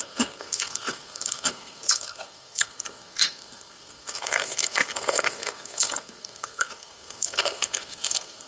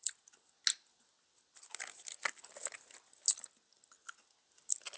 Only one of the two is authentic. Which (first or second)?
second